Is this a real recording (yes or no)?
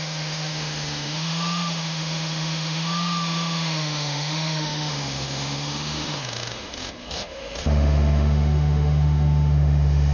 no